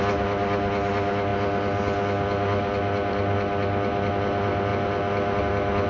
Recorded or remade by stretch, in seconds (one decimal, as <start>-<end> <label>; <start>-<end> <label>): 0.0-5.9 recorded

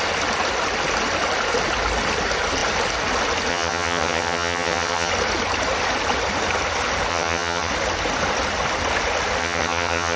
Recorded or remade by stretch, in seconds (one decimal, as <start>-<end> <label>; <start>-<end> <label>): 0.0-3.5 recorded; 3.5-5.1 remade; 5.1-7.1 recorded; 7.1-7.7 remade; 7.7-9.4 recorded; 9.4-10.2 remade